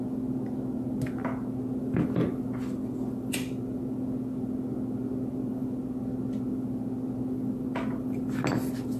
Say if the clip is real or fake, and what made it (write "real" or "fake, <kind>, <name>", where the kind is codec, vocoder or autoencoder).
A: real